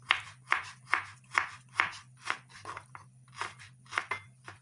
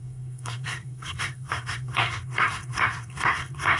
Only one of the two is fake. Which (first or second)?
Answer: second